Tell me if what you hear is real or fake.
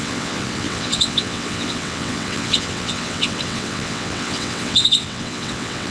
fake